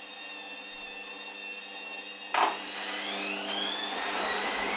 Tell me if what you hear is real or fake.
real